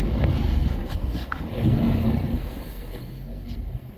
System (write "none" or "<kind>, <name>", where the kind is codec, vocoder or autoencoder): codec, SNAC